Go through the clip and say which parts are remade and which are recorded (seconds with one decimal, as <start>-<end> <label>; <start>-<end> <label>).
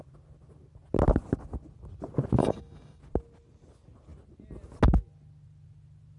0.0-2.4 recorded; 2.4-3.0 remade; 3.0-6.2 recorded